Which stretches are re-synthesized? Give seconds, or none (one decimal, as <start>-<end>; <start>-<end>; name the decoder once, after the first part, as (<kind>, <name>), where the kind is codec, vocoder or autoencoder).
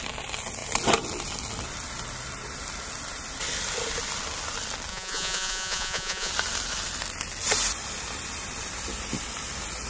4.9-6.3 (vocoder, Vocos)